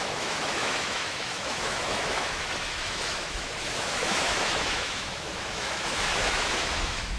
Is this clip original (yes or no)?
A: no